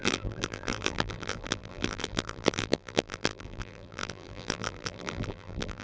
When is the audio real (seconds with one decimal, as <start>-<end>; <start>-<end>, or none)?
none